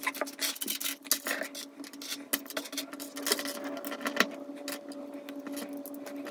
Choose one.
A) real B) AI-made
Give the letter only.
A